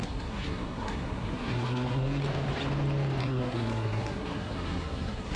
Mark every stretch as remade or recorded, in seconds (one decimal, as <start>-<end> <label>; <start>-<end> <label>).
0.0-2.2 remade; 2.2-3.2 recorded; 3.2-5.4 remade